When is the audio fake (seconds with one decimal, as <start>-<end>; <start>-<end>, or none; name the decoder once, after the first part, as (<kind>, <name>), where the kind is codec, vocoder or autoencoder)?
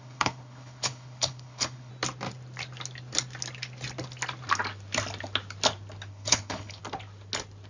0.0-1.9 (codec, HILCodec); 6.1-6.8